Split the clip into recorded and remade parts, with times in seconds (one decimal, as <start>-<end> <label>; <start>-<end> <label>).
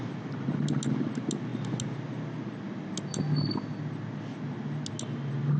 0.0-5.6 recorded